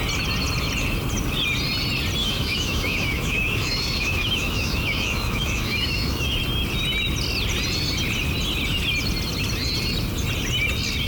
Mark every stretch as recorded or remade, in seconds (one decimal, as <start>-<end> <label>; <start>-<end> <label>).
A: 0.0-2.2 recorded; 2.2-6.4 remade; 6.4-11.1 recorded